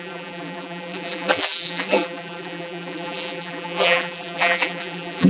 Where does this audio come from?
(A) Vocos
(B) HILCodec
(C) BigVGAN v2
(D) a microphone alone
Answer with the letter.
C